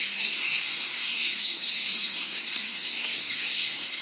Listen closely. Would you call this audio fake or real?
fake